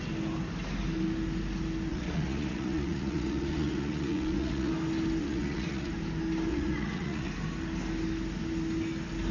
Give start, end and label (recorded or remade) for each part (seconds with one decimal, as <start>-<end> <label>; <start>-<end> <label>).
0.0-1.9 recorded; 1.9-4.7 remade; 4.7-5.2 recorded; 5.2-5.9 remade; 5.9-6.5 recorded; 6.5-7.3 remade; 7.3-9.3 recorded